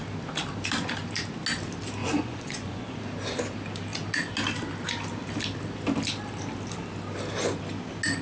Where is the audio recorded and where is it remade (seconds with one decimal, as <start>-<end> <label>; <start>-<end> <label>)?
0.0-2.0 recorded; 2.0-3.0 remade; 3.0-8.2 recorded